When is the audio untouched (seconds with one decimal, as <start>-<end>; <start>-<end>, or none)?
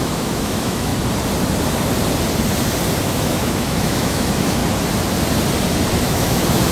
0.9-3.0; 4.6-6.0